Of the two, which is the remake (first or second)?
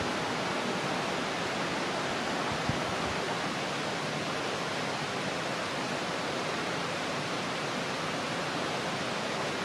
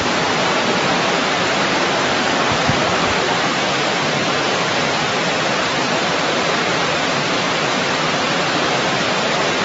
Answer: second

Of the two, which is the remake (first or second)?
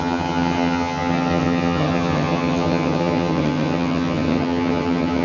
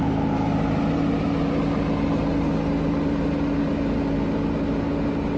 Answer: first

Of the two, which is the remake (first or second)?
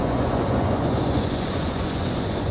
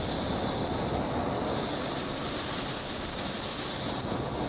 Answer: first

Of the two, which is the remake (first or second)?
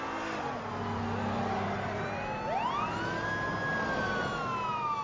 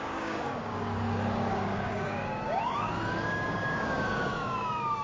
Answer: second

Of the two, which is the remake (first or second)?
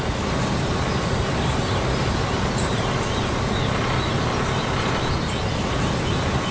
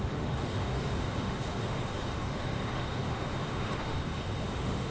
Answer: second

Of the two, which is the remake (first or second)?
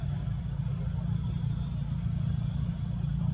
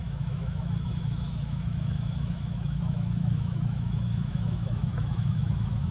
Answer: second